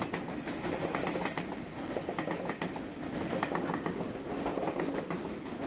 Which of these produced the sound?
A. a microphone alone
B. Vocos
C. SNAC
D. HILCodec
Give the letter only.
A